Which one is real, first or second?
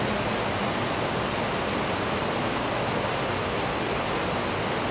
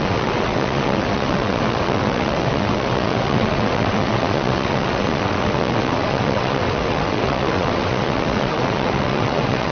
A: first